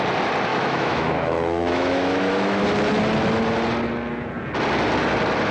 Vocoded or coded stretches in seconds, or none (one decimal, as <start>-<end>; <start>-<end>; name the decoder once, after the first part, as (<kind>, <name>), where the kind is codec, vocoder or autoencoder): 0.5-2.6 (autoencoder, DAC-VAE)